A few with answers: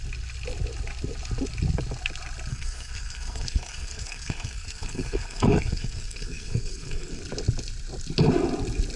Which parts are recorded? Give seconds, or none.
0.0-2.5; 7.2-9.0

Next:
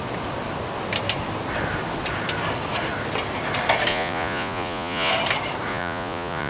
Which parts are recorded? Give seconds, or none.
0.0-3.9; 5.1-5.7

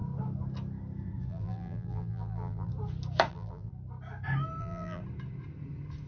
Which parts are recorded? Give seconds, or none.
0.0-1.3; 2.7-3.3; 3.7-4.6; 5.0-6.1

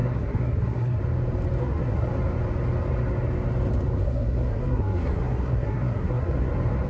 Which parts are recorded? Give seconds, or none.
1.0-1.6; 2.1-4.0; 6.5-6.9

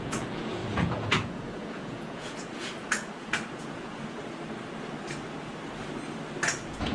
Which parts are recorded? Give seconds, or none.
4.2-6.5

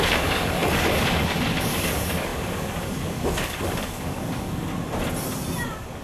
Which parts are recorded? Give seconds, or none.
4.7-6.0

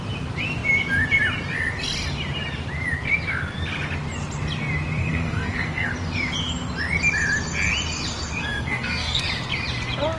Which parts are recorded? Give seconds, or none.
0.0-5.0; 5.9-8.4; 9.2-10.2